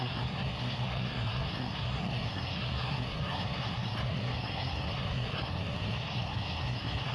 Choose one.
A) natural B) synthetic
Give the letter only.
B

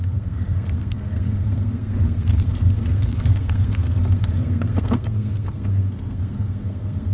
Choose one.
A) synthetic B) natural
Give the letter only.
A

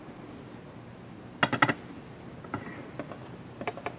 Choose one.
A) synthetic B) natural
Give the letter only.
B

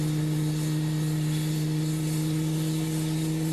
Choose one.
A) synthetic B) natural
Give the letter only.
B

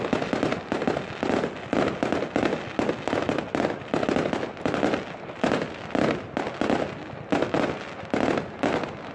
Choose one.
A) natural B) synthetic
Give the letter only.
A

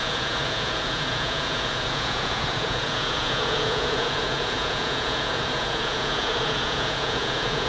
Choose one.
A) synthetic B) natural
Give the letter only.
A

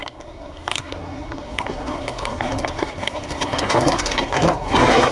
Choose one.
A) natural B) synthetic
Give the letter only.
B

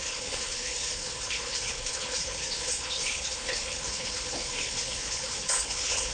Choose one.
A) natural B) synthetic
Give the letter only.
B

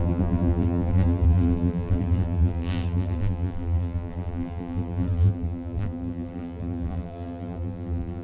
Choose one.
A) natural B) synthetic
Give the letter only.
B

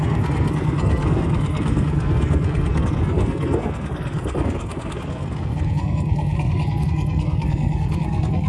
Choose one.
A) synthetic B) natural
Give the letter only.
A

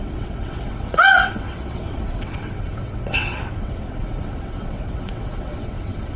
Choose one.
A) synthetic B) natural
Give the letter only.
A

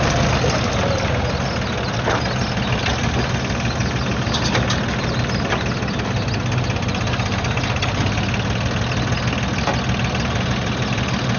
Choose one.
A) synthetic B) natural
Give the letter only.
B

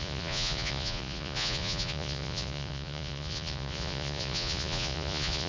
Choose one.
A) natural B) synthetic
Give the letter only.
B